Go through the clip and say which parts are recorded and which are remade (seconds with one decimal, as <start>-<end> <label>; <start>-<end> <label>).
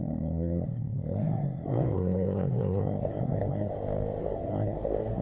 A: 0.0-3.7 remade; 3.7-4.2 recorded; 4.2-5.2 remade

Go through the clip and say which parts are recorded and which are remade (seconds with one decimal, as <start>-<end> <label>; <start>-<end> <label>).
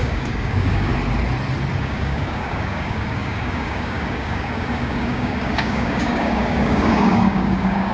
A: 0.0-0.9 remade; 0.9-1.8 recorded; 1.8-7.9 remade